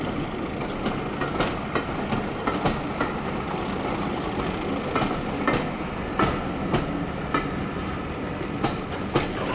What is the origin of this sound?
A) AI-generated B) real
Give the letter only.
B